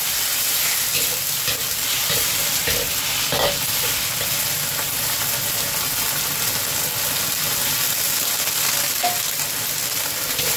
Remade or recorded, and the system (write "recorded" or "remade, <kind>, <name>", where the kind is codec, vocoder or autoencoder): recorded